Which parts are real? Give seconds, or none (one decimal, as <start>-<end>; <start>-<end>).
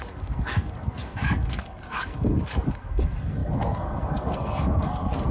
none